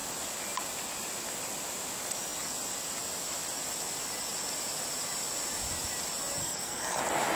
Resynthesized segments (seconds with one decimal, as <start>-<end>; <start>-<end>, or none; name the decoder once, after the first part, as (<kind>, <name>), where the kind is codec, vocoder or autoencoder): 6.4-7.0 (codec, SNAC)